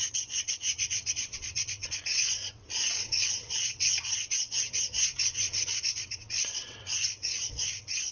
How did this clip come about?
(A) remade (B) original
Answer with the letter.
A